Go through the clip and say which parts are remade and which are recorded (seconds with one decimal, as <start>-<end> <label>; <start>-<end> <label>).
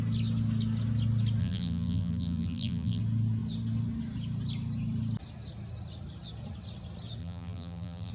0.0-1.4 recorded; 1.4-3.0 remade; 3.0-7.2 recorded; 7.2-8.1 remade